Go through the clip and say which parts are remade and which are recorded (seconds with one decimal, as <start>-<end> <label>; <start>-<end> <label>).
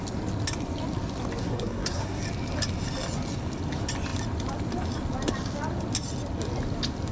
0.0-1.4 recorded; 1.4-2.2 remade; 2.2-7.1 recorded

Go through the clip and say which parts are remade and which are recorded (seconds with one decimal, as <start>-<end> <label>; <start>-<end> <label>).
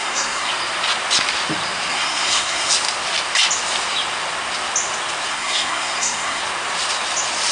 0.0-0.5 remade; 0.5-1.9 recorded; 1.9-2.7 remade; 2.7-5.3 recorded; 5.3-6.4 remade; 6.4-7.5 recorded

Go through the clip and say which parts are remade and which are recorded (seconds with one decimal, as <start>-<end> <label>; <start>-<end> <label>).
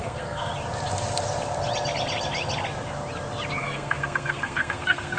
0.0-0.5 remade; 0.5-3.6 recorded; 3.6-5.2 remade